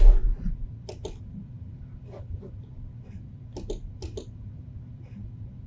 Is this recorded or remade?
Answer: recorded